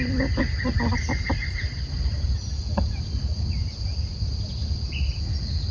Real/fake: real